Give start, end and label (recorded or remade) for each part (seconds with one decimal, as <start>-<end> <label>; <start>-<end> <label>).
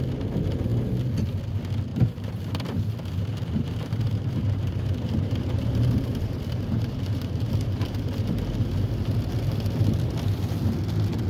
0.0-1.9 recorded; 1.9-2.4 remade; 2.4-3.3 recorded; 3.3-8.5 remade; 8.5-11.3 recorded